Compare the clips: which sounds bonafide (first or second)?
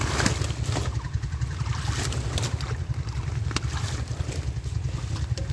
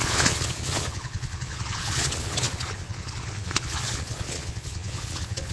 first